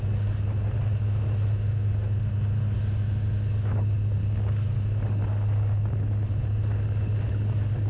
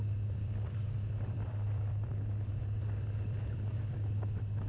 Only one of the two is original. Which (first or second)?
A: first